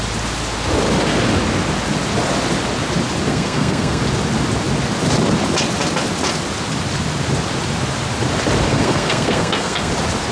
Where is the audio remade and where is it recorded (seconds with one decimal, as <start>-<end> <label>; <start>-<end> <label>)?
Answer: 0.0-3.3 recorded; 3.3-4.0 remade; 4.0-8.7 recorded; 8.7-9.9 remade; 9.9-10.3 recorded